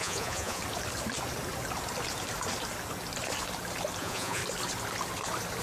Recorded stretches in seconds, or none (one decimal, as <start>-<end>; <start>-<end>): 0.6-4.0; 4.4-5.6